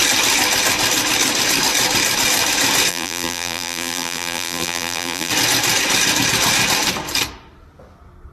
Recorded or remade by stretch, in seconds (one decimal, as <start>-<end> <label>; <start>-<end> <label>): 0.0-2.9 recorded; 2.9-5.3 remade; 5.3-8.3 recorded